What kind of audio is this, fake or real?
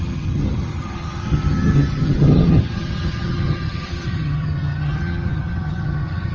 fake